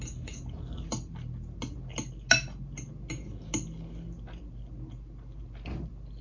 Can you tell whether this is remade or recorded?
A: recorded